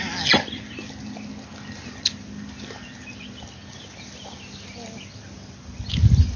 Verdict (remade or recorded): recorded